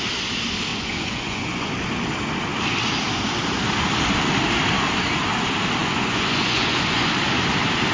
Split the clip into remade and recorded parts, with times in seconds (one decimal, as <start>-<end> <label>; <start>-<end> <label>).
0.0-0.7 recorded; 0.7-1.7 remade; 1.7-5.8 recorded; 5.8-7.1 remade; 7.1-7.9 recorded